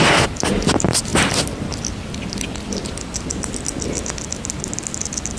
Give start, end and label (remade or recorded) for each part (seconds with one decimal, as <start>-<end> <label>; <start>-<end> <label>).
0.0-5.4 recorded